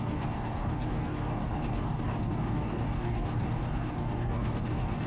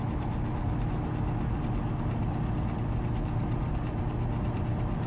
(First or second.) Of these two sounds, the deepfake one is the first